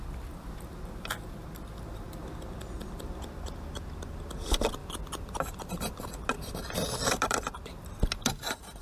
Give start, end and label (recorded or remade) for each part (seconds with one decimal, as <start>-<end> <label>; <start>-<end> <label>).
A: 0.0-8.8 recorded